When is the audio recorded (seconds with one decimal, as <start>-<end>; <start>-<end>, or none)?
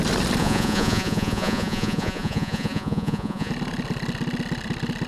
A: 0.0-0.4; 3.5-5.1